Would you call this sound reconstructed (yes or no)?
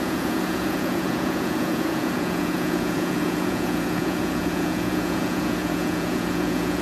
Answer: yes